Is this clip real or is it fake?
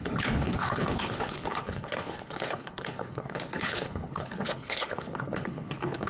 fake